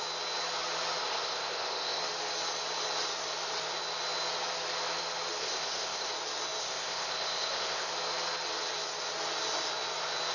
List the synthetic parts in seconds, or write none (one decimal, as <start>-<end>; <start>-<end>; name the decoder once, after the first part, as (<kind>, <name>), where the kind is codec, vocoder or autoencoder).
1.0-2.0 (codec, ZipCodec); 5.4-6.1; 6.6-7.9